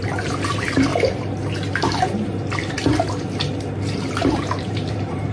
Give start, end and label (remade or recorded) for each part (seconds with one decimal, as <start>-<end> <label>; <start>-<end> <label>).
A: 0.0-0.9 remade; 0.9-4.1 recorded; 4.1-5.3 remade